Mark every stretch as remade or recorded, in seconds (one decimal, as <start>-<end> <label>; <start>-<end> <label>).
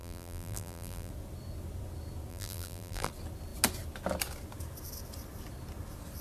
0.0-1.1 remade; 1.1-2.3 recorded; 2.3-3.1 remade; 3.1-6.2 recorded